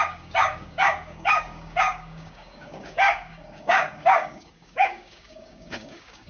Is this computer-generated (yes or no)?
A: yes